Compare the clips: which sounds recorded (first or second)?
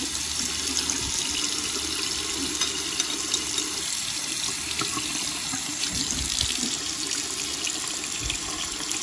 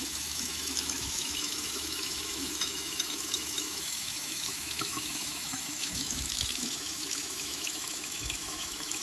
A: first